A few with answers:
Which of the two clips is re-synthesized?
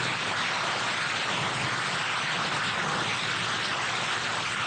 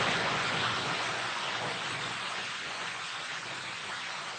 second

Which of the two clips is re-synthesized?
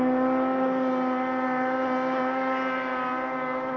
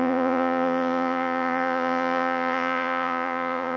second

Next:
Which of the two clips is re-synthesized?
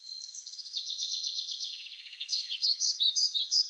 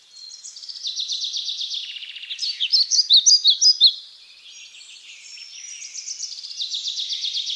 first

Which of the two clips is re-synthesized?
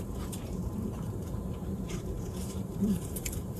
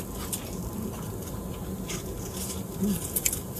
first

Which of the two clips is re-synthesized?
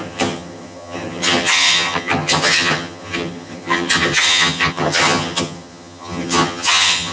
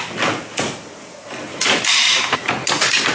first